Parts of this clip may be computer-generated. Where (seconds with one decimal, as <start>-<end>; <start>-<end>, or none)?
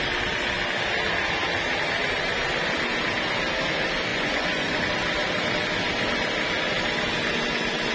4.1-4.8